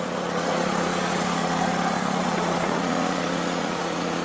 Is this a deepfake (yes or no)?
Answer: yes